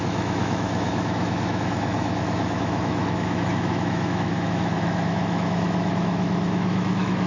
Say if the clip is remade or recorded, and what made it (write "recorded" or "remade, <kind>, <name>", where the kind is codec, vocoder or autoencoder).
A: remade, autoencoder, DAC-VAE